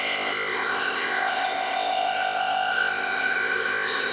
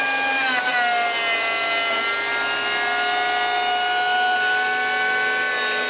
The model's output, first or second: first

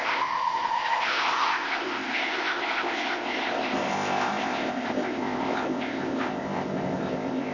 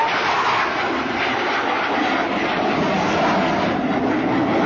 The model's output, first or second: first